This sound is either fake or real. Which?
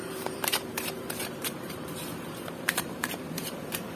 fake